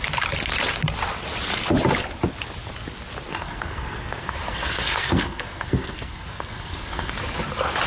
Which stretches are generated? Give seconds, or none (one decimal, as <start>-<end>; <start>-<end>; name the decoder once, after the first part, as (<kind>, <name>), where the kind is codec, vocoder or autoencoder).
3.3-7.1 (codec, SNAC)